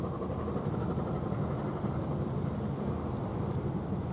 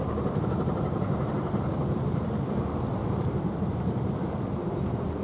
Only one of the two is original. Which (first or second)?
first